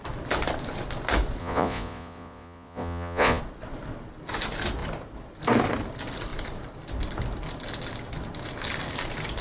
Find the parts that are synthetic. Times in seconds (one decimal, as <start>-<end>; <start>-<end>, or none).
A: 1.4-3.4